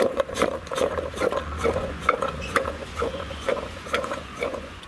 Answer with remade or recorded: remade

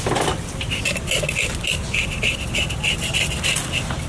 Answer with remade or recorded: recorded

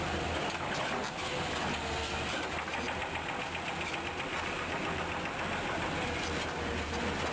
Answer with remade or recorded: recorded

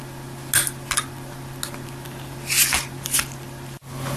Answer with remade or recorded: recorded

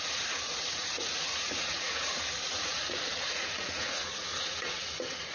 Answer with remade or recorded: remade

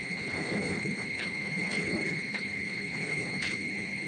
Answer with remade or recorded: remade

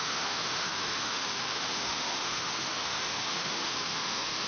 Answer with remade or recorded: remade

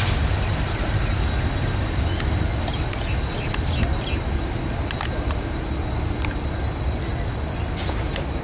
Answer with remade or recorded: recorded